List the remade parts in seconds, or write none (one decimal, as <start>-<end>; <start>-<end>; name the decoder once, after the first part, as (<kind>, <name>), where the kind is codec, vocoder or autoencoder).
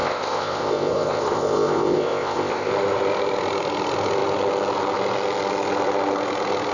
0.0-2.7 (codec, ZipCodec)